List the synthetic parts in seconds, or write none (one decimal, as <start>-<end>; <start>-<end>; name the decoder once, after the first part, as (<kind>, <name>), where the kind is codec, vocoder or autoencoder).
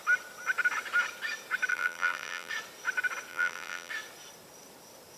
1.7-2.5 (vocoder, BigVGAN v2); 3.3-3.9